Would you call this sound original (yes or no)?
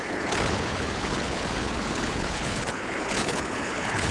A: no